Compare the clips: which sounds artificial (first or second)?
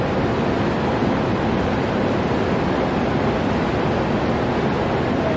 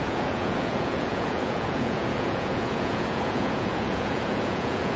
second